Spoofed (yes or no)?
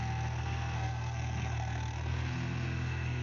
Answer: yes